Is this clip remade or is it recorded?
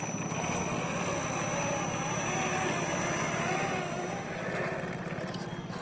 recorded